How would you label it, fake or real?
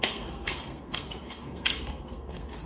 fake